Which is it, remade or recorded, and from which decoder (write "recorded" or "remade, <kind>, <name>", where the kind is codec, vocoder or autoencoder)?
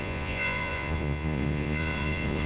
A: remade, vocoder, Vocos